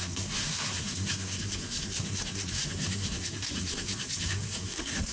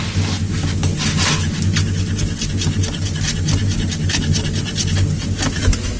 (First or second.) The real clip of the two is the second